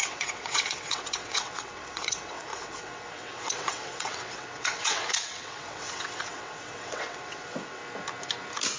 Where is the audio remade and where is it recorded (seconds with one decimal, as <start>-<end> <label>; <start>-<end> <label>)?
0.0-7.8 remade; 7.8-8.8 recorded